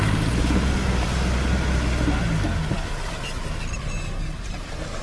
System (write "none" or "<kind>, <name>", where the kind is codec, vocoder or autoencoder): none